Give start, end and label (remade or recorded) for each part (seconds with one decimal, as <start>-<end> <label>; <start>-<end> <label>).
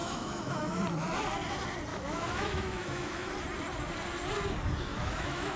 0.0-0.8 remade; 0.8-1.9 recorded; 1.9-3.3 remade; 3.3-4.9 recorded; 4.9-5.6 remade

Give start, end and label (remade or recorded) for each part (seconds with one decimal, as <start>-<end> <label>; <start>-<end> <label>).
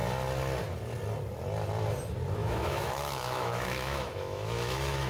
0.0-2.4 recorded; 2.4-5.1 remade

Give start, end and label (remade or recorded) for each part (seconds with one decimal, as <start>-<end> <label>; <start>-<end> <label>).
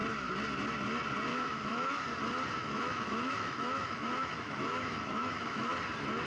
0.0-1.3 recorded; 1.3-2.0 remade; 2.0-2.6 recorded; 2.6-5.7 remade; 5.7-6.3 recorded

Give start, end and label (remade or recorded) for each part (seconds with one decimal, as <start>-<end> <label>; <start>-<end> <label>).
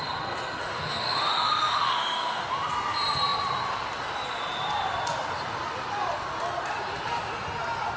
0.0-0.6 recorded; 0.6-2.5 remade; 2.5-8.0 recorded